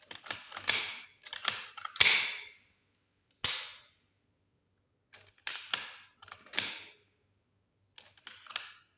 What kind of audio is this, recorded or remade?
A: recorded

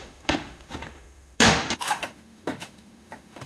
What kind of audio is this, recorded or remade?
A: remade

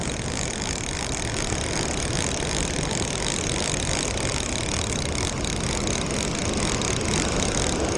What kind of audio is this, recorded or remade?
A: recorded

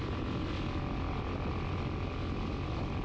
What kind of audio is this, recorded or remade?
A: recorded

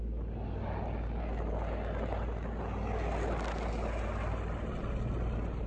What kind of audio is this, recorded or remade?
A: recorded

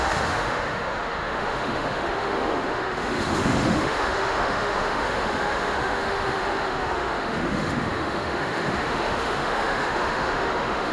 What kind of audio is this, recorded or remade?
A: remade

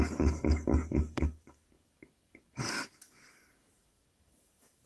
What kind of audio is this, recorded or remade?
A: remade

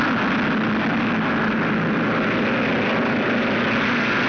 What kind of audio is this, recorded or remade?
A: recorded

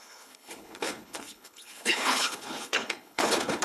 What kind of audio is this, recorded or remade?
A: remade